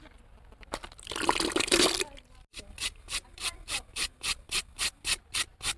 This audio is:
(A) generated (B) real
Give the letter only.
B